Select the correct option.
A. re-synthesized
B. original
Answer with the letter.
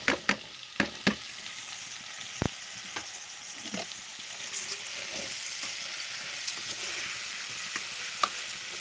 B